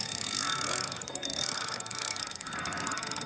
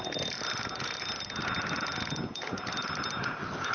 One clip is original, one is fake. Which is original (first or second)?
second